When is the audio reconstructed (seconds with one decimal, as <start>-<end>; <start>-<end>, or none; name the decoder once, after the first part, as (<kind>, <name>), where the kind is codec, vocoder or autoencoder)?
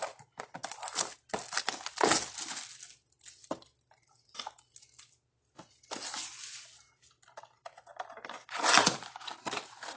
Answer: none